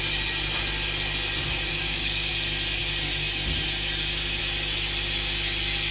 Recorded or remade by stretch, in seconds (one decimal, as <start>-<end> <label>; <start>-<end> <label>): 0.0-1.7 recorded; 1.7-2.3 remade; 2.3-5.9 recorded